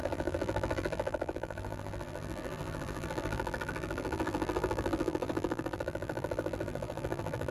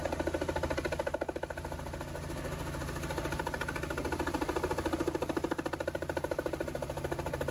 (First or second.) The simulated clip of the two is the first